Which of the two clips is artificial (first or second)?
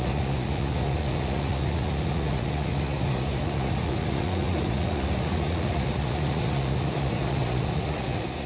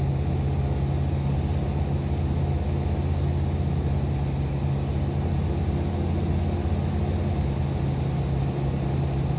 first